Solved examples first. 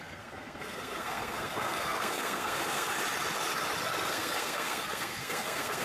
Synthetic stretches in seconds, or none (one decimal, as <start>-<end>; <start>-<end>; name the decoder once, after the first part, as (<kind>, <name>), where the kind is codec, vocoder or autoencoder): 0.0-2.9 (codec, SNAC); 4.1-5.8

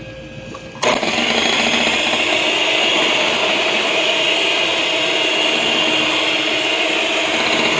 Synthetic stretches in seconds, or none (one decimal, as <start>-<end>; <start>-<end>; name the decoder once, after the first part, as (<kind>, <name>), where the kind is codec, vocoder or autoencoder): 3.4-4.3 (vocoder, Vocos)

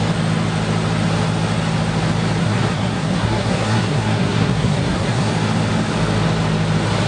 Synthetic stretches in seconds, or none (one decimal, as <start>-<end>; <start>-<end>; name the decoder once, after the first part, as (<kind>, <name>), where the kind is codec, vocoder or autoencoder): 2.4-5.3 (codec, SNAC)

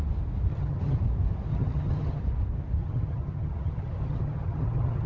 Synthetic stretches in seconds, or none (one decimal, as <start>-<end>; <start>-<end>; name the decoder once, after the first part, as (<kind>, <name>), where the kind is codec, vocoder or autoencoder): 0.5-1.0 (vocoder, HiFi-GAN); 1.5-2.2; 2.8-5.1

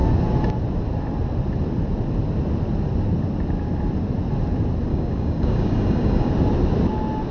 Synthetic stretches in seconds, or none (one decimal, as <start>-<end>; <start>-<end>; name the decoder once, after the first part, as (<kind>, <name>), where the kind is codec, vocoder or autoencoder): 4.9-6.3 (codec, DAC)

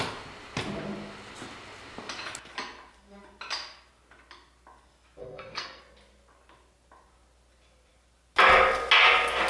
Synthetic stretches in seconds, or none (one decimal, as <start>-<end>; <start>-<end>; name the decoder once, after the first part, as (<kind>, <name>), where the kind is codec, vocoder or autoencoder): 5.2-5.8 (codec, SNAC)

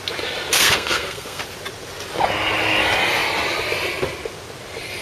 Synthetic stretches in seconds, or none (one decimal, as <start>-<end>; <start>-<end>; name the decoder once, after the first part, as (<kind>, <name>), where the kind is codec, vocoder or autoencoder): 0.5-1.4 (codec, SNAC)

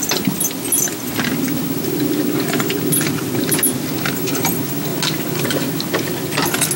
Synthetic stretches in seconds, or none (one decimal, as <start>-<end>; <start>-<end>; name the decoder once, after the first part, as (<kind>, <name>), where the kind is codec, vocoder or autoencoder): none